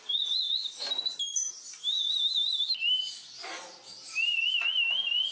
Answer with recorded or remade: recorded